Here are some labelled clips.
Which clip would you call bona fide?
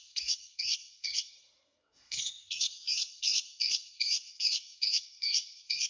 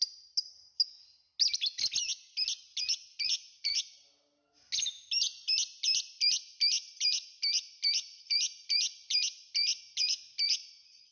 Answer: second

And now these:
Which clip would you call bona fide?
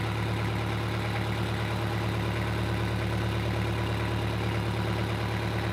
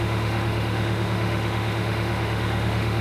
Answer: first